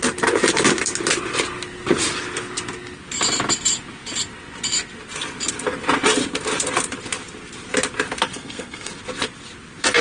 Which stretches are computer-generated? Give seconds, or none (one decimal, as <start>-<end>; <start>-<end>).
8.3-8.9